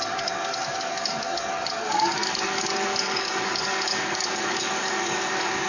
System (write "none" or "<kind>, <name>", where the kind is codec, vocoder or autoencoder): codec, DAC